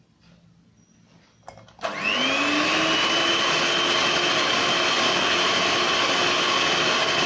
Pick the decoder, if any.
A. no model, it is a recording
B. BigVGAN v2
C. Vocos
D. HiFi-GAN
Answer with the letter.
A